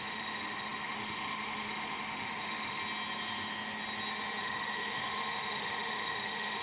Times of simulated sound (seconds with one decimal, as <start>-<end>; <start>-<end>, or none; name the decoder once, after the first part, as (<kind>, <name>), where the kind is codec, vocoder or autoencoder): 0.0-2.8 (autoencoder, DAC-VAE); 4.4-6.6

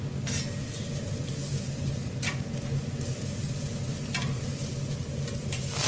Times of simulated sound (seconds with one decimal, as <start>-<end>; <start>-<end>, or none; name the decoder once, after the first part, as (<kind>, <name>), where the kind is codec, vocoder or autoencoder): 3.9-4.7 (vocoder, BigVGAN v2)